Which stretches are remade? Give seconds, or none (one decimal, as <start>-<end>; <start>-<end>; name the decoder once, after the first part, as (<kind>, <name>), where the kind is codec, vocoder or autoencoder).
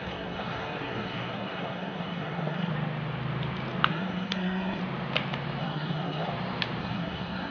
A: 0.0-2.7 (codec, SNAC); 3.9-4.8; 5.6-6.3; 6.8-7.5